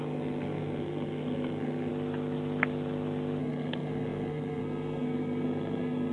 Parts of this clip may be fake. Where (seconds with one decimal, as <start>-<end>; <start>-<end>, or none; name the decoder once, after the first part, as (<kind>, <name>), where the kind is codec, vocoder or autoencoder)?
0.0-1.9 (codec, SNAC); 3.4-6.1